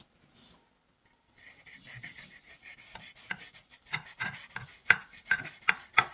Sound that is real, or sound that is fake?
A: real